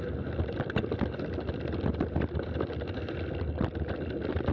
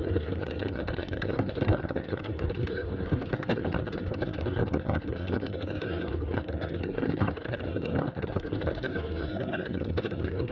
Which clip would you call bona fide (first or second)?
first